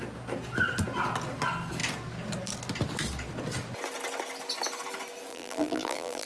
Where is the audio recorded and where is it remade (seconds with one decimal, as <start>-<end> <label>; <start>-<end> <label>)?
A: 0.0-5.3 recorded; 5.3-6.3 remade